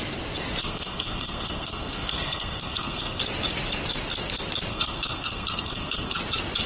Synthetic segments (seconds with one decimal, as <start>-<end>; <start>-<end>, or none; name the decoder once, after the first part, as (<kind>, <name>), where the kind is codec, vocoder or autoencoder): 0.6-3.2 (codec, SNAC); 4.7-6.2

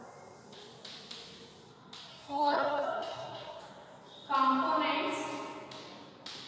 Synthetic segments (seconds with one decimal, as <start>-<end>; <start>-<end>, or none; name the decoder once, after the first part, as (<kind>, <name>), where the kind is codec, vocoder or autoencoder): 2.1-3.6 (codec, SNAC)

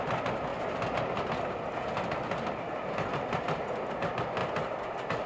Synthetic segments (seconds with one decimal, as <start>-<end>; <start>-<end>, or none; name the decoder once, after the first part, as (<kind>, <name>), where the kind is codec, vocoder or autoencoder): none

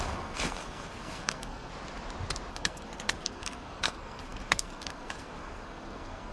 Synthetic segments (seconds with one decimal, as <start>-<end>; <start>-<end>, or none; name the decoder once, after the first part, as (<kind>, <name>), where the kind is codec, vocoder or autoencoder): 0.0-1.7 (codec, SNAC); 2.5-6.3

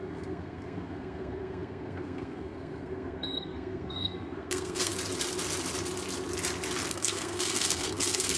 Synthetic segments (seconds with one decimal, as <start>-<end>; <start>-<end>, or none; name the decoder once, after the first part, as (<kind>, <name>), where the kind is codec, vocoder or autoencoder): 0.0-4.9 (codec, SNAC); 6.9-8.4

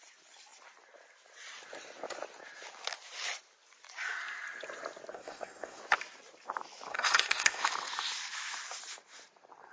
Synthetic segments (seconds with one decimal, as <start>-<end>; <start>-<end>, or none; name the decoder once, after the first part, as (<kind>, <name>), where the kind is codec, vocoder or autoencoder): 5.1-5.8 (codec, SNAC); 6.9-7.6

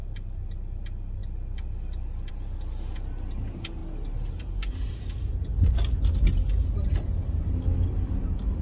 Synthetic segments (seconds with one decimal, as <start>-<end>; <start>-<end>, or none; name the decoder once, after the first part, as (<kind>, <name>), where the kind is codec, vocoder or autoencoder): none